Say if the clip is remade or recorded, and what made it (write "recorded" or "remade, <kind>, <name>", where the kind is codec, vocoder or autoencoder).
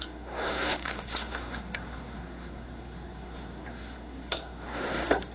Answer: remade, codec, SNAC